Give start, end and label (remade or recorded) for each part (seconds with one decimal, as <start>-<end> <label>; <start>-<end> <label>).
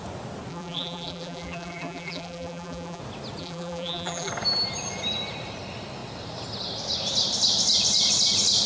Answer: 0.0-0.5 recorded; 0.5-3.0 remade; 3.0-3.4 recorded; 3.4-4.3 remade; 4.3-8.7 recorded